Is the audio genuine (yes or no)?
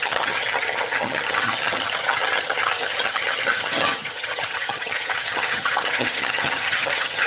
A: no